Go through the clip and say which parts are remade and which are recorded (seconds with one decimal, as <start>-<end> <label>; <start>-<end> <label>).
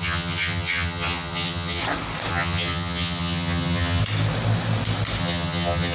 0.0-1.8 remade; 1.8-2.3 recorded; 2.3-4.0 remade; 4.0-5.2 recorded; 5.2-5.9 remade